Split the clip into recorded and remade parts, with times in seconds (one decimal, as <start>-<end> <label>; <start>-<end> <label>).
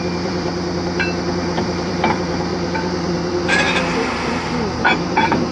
0.0-0.5 remade; 0.5-1.3 recorded; 1.3-5.5 remade